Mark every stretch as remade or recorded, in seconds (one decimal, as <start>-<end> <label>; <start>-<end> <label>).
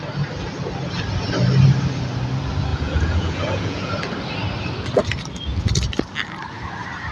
0.0-2.7 recorded; 2.7-3.9 remade; 3.9-7.1 recorded